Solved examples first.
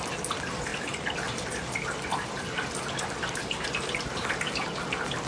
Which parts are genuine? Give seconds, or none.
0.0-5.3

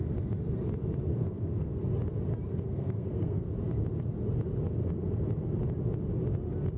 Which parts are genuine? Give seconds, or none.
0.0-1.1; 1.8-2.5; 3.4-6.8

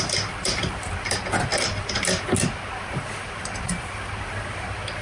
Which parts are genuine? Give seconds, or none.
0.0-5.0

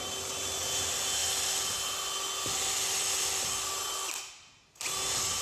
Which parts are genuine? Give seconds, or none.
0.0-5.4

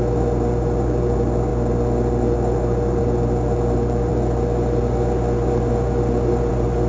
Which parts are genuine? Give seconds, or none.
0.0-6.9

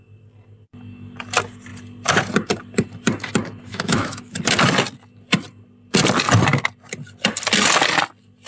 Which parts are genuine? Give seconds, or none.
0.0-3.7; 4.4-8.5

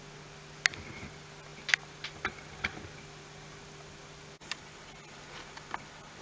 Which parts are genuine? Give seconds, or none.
0.0-6.2

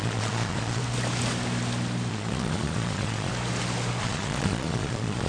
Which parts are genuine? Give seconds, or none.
0.8-2.1; 3.3-4.0